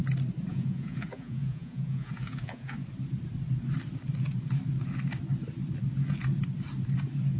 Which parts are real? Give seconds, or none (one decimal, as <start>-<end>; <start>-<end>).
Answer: 0.0-0.5; 2.8-7.4